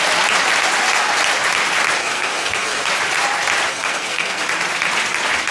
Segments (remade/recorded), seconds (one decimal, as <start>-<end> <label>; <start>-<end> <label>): 0.0-2.0 recorded; 2.0-2.9 remade; 2.9-3.7 recorded; 3.7-4.4 remade; 4.4-5.5 recorded